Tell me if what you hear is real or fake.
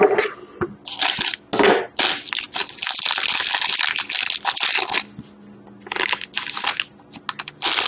real